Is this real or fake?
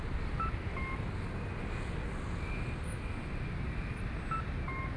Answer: real